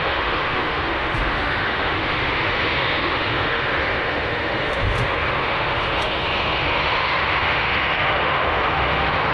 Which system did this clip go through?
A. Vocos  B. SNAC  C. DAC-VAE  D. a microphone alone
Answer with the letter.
C